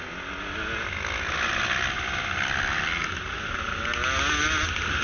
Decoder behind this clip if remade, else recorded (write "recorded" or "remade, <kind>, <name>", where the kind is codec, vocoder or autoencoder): recorded